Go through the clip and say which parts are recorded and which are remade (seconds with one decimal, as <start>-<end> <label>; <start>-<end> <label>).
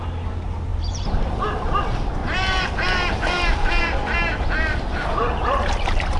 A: 0.0-0.7 recorded; 0.7-1.4 remade; 1.4-2.2 recorded; 2.2-6.2 remade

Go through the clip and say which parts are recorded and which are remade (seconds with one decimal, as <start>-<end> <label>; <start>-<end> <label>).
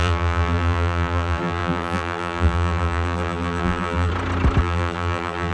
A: 0.0-4.1 remade; 4.1-4.6 recorded; 4.6-5.5 remade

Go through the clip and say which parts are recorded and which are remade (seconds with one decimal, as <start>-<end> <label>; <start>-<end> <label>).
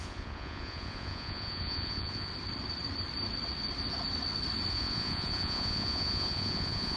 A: 0.0-2.3 remade; 2.3-4.7 recorded; 4.7-7.0 remade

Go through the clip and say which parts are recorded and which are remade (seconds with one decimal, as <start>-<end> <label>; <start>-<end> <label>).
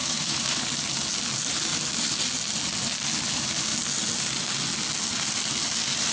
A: 0.0-0.6 remade; 0.6-6.1 recorded